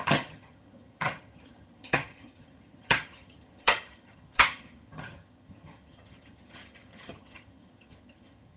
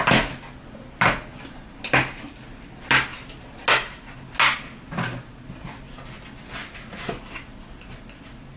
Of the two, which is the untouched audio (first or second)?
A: second